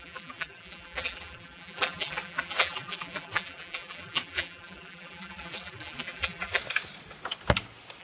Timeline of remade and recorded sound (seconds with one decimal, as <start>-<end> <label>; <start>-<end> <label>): 0.0-6.6 remade; 6.6-8.0 recorded